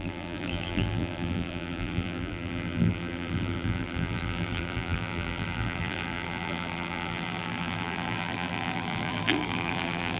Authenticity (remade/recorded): remade